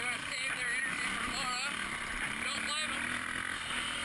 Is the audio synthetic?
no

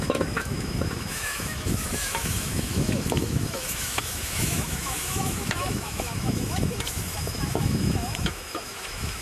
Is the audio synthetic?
yes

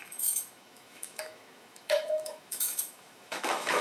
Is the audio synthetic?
yes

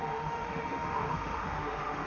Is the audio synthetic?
yes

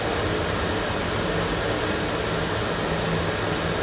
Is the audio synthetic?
no